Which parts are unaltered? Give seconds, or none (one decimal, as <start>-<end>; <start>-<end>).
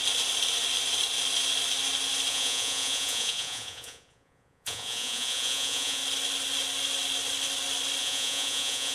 0.0-2.3; 6.0-8.0